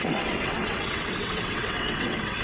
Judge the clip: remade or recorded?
remade